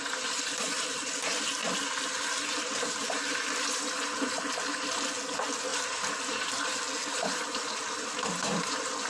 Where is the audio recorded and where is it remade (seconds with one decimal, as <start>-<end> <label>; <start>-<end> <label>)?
0.0-9.1 recorded